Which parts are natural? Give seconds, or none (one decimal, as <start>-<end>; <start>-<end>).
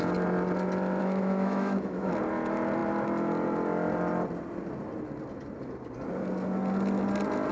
0.0-1.0; 2.1-7.5